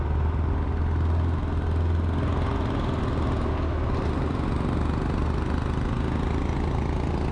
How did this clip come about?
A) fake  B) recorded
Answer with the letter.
B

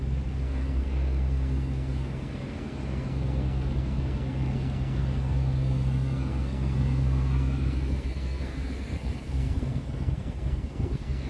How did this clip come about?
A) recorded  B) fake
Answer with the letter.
B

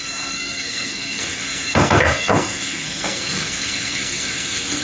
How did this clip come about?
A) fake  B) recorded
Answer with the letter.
A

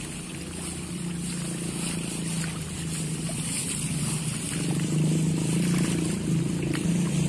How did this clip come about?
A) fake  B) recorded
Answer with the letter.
B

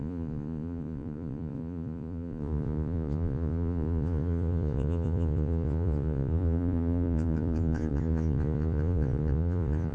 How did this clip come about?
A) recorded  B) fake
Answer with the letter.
B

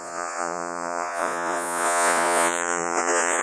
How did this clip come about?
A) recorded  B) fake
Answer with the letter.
B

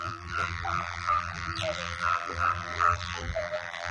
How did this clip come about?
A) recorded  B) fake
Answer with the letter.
B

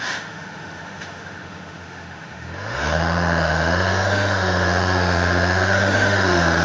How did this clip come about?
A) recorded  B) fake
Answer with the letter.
B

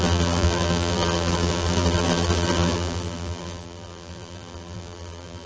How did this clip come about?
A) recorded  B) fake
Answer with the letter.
B